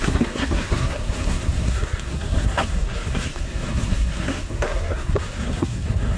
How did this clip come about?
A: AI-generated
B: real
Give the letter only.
A